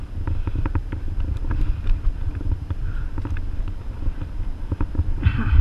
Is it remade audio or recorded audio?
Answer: recorded